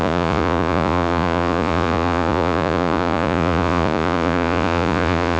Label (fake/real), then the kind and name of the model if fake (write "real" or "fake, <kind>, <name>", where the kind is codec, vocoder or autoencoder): fake, vocoder, Vocos